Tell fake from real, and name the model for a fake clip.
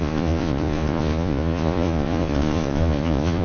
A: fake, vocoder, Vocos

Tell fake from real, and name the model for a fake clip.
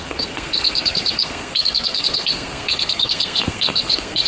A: fake, codec, SNAC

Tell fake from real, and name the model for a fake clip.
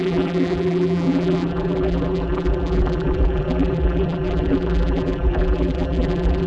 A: fake, vocoder, BigVGAN v2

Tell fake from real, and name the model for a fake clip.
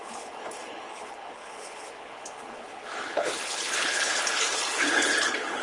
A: fake, codec, HILCodec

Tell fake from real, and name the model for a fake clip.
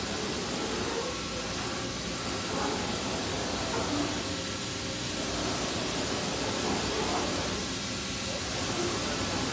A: real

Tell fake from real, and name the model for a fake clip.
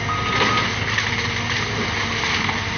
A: real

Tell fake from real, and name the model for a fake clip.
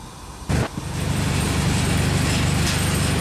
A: real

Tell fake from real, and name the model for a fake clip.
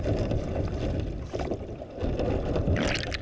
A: real